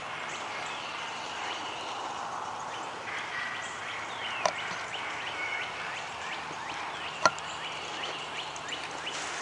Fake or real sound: fake